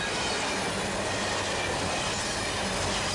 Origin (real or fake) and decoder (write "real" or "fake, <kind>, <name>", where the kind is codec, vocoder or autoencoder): real